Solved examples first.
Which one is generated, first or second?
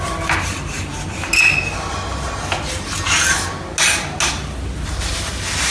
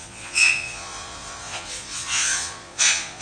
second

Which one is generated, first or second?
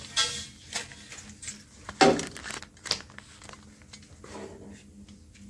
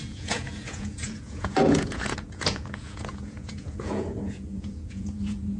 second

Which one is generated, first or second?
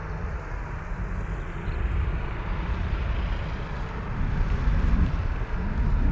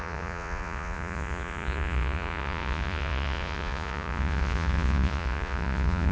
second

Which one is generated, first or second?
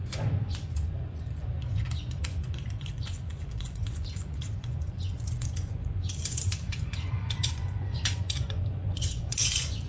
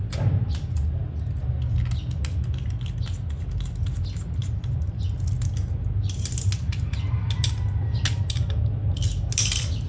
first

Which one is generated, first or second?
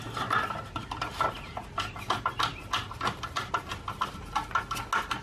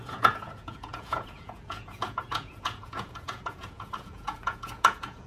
second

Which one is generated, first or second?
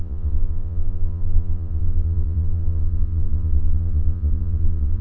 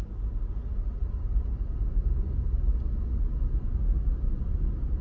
first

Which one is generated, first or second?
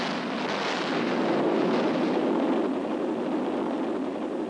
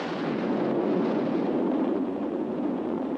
second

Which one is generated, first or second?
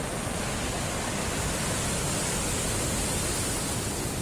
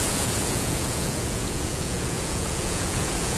second